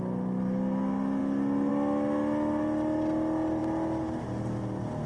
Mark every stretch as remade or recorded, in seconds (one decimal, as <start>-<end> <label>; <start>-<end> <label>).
0.0-5.1 recorded